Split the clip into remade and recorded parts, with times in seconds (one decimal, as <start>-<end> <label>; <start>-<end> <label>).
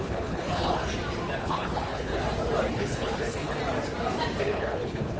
0.0-0.8 remade; 0.8-1.4 recorded; 1.4-2.1 remade; 2.1-2.7 recorded; 2.7-3.6 remade; 3.6-4.4 recorded; 4.4-5.2 remade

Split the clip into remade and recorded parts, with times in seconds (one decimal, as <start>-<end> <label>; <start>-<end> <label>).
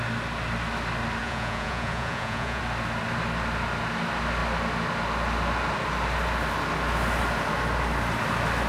0.0-1.2 recorded; 1.2-2.6 remade; 2.6-8.7 recorded